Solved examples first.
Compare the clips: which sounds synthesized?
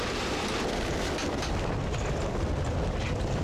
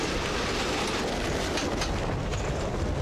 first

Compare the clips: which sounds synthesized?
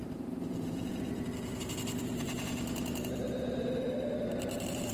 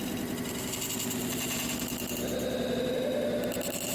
first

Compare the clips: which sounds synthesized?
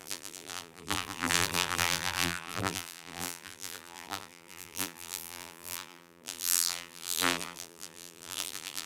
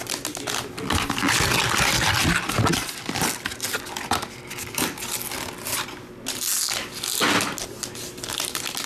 first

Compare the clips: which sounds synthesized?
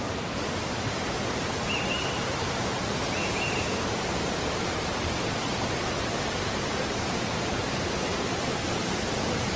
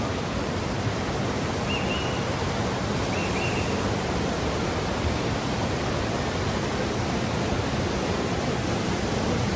first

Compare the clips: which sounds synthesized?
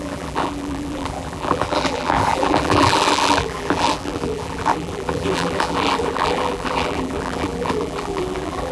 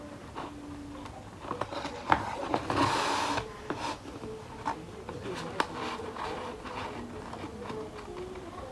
first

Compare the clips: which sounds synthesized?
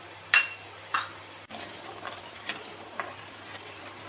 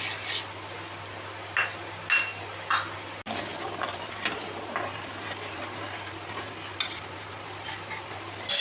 first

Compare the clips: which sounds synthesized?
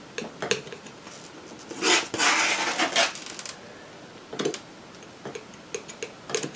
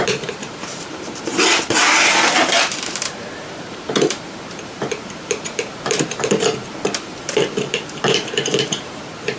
second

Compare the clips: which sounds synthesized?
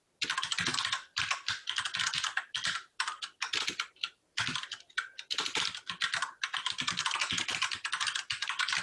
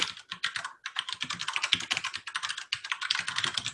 first